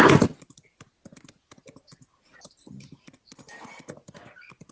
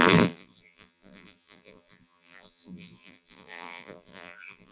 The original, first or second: first